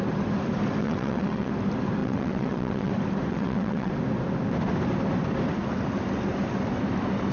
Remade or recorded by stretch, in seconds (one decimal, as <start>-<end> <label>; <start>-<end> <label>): 0.0-0.8 recorded; 0.8-1.5 remade; 1.5-2.0 recorded; 2.0-2.9 remade; 2.9-3.3 recorded; 3.3-3.9 remade; 3.9-7.3 recorded